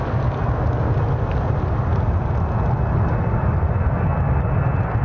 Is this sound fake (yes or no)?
no